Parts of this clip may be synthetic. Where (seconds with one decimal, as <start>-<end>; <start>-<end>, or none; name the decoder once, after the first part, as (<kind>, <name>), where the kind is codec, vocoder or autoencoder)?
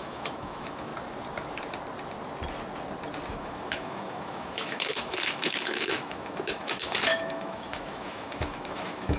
0.0-0.9 (autoencoder, DAC-VAE); 3.3-9.2